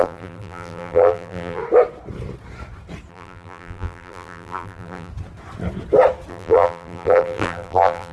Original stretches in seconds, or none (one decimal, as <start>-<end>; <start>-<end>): 1.6-3.1; 5.1-6.3